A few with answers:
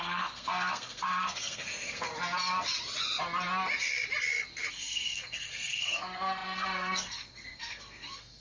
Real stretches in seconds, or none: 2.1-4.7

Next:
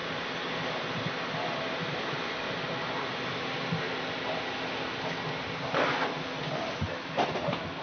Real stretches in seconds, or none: 0.0-7.8

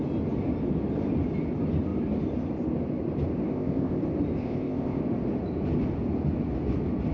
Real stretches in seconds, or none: 0.0-3.5; 4.0-4.4; 5.0-7.1

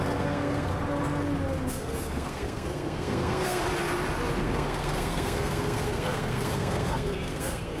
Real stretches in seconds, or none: 0.7-1.7; 3.6-4.4

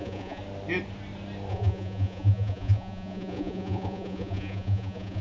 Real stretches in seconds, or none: 0.4-1.5

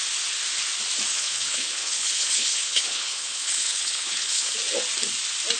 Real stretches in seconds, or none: 0.0-1.1; 4.5-5.6